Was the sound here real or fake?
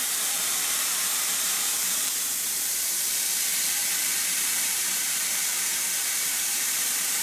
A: fake